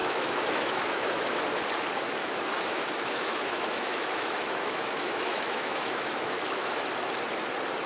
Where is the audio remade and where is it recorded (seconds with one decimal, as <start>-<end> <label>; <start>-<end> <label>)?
0.0-1.4 remade; 1.4-2.2 recorded; 2.2-6.8 remade; 6.8-7.9 recorded